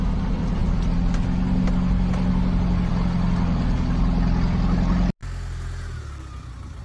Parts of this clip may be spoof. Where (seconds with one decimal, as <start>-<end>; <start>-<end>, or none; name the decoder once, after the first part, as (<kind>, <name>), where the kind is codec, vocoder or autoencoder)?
none